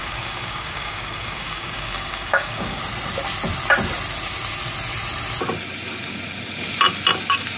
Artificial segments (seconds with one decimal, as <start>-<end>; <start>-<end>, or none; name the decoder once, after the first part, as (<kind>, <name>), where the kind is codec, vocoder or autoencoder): 0.0-2.8 (codec, DAC)